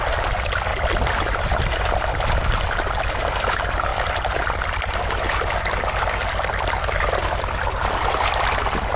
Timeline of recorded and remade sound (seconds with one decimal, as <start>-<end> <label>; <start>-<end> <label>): 0.0-0.7 recorded; 0.7-1.9 remade; 1.9-3.9 recorded; 3.9-4.9 remade; 4.9-9.0 recorded

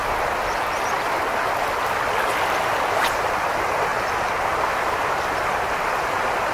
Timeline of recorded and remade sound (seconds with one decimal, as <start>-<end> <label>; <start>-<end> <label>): 0.0-6.5 recorded

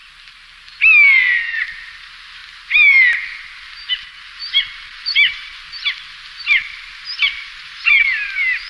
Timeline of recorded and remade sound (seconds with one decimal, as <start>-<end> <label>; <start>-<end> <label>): 0.0-1.6 recorded; 1.6-2.4 remade; 2.4-3.7 recorded; 3.7-5.5 remade; 5.5-7.1 recorded; 7.1-8.7 remade

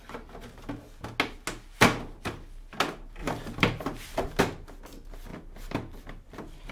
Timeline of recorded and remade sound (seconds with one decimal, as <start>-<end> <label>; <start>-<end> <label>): 0.0-3.2 recorded; 3.2-4.4 remade; 4.4-5.3 recorded; 5.3-6.7 remade

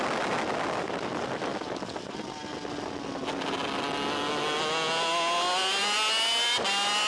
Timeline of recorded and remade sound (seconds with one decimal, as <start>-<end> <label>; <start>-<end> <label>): 0.0-7.1 recorded

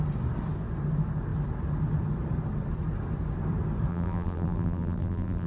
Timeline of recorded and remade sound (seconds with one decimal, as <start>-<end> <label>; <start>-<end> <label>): 0.0-3.9 recorded; 3.9-5.5 remade

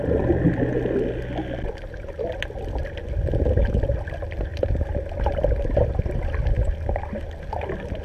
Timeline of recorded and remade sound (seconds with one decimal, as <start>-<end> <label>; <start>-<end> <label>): 0.0-4.5 recorded; 4.5-5.9 remade; 5.9-8.0 recorded